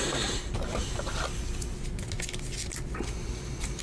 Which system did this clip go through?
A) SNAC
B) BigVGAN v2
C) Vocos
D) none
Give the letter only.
D